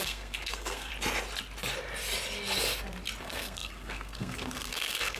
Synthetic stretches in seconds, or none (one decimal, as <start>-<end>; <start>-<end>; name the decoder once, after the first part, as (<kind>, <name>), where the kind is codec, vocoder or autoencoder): 0.0-0.9 (codec, SNAC); 3.2-5.2